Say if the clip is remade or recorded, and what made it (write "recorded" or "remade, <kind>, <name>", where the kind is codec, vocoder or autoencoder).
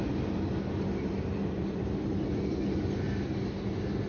recorded